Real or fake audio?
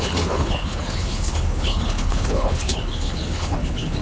fake